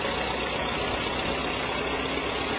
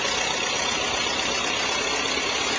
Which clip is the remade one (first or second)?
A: second